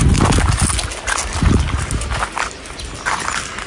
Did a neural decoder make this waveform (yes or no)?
no